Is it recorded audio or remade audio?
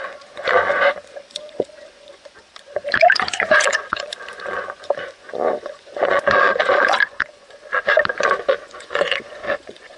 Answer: remade